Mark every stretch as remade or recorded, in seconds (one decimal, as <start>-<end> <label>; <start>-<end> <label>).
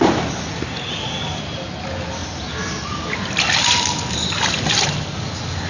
0.0-5.7 recorded